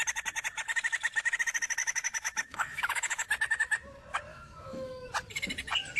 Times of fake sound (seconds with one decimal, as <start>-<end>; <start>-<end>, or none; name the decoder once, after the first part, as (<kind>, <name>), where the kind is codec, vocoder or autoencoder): 1.8-3.3 (autoencoder, DAC-VAE); 4.3-5.1